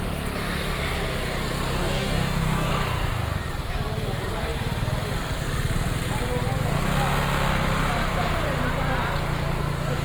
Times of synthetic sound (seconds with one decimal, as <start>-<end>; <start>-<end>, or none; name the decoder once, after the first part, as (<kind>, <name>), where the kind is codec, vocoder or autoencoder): 1.8-2.7 (codec, DAC)